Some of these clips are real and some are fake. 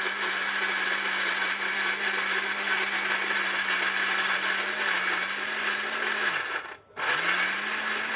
real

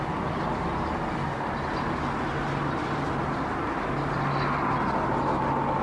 real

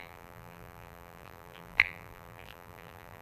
fake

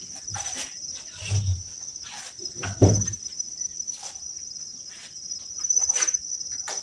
real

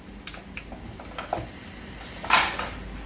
fake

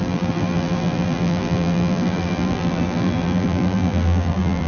fake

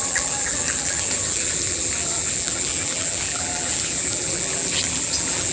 fake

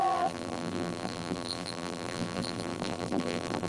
fake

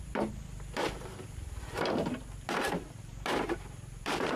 fake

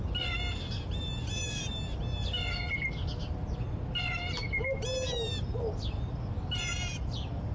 real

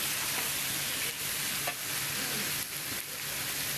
real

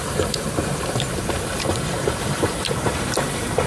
fake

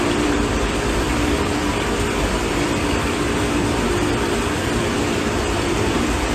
fake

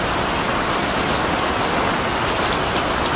real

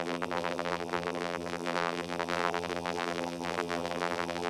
fake